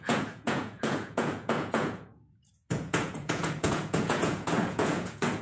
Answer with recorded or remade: remade